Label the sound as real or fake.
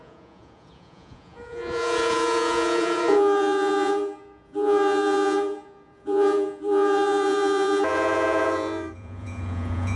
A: fake